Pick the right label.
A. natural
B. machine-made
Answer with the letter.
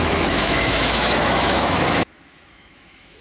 B